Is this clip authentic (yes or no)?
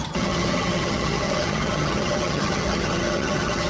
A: no